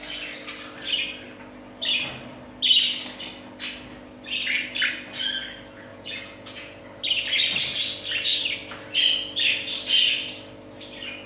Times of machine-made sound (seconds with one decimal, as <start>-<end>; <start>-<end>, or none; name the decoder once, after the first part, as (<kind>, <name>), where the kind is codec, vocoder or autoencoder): 5.9-6.8 (vocoder, Vocos)